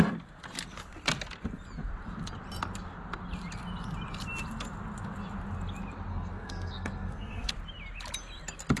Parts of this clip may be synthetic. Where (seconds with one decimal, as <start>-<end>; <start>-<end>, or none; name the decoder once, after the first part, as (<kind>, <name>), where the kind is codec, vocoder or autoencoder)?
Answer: 6.1-7.5 (codec, SNAC)